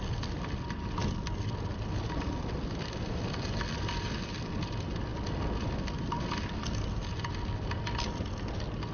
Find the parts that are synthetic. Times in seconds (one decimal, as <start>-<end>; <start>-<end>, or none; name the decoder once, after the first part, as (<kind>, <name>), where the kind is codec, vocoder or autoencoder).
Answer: none